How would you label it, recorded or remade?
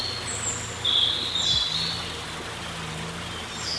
recorded